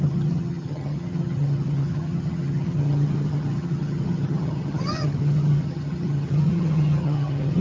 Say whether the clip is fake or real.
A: fake